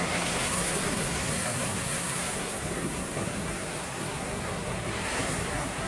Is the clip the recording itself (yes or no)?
no